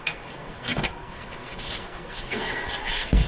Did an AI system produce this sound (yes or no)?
yes